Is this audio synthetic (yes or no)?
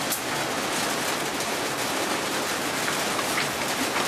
no